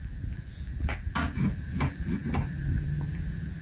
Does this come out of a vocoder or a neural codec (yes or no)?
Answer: yes